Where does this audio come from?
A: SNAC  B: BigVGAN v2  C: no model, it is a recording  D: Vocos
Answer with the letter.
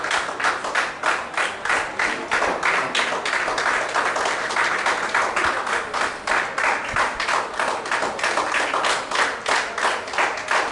C